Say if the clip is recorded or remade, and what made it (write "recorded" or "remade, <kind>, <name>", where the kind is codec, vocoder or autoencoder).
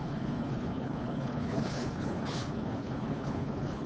remade, codec, HILCodec